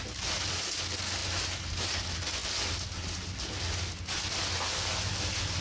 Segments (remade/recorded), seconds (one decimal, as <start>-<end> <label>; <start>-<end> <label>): 0.0-1.2 recorded; 1.2-1.9 remade; 1.9-5.6 recorded